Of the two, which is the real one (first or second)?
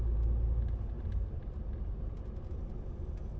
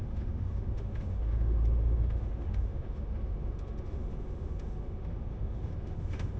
first